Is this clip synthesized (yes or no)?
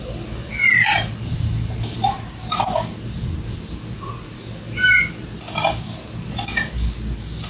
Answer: no